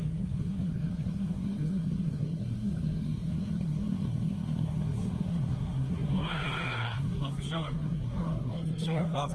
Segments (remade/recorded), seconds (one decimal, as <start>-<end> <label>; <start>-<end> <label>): 0.0-9.3 remade